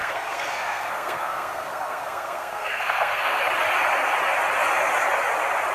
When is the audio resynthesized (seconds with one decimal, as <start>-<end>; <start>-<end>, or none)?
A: 0.0-3.4